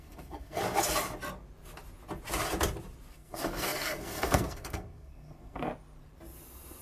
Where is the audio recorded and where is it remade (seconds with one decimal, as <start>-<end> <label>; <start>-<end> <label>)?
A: 0.0-0.6 remade; 0.6-3.1 recorded; 3.1-5.7 remade; 5.7-6.8 recorded